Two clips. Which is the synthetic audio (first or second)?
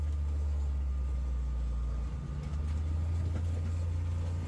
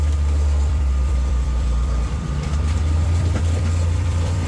second